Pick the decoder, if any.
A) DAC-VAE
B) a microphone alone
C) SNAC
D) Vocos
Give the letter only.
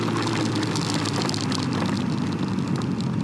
B